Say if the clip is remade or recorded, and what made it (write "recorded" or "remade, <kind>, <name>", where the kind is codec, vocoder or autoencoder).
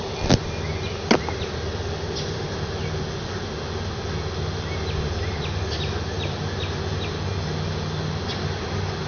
recorded